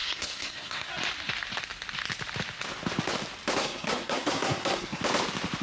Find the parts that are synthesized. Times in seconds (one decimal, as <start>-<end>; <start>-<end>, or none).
0.0-0.9; 3.6-5.0